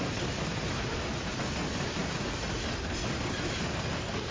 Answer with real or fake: real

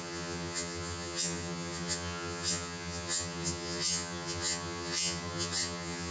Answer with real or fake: fake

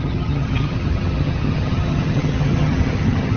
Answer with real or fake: fake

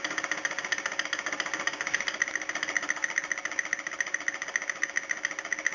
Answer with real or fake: real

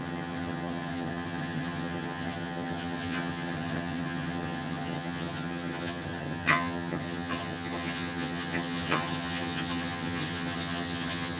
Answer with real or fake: fake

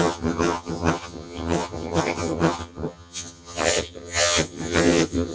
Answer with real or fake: fake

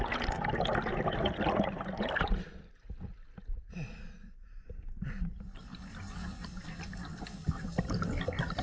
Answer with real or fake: real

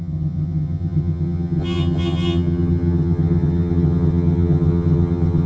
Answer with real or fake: fake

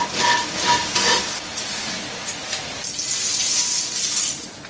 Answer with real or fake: real